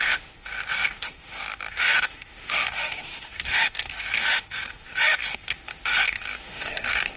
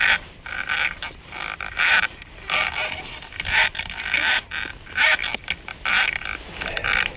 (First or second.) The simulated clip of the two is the first